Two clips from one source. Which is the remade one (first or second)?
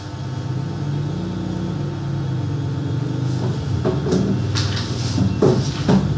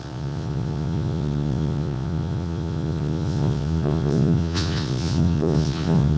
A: second